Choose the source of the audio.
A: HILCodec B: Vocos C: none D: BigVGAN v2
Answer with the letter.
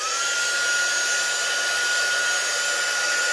C